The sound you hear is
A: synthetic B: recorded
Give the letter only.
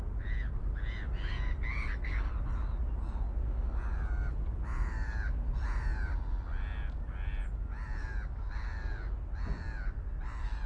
B